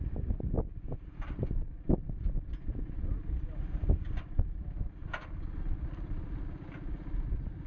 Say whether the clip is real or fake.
real